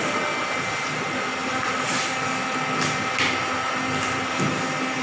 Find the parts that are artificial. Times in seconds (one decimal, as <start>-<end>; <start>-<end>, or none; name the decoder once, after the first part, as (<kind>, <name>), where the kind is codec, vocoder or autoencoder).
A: none